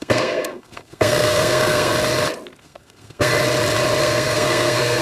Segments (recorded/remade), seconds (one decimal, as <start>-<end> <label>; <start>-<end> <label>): 0.0-1.9 remade; 1.9-2.6 recorded; 2.6-3.3 remade; 3.3-4.0 recorded; 4.0-5.0 remade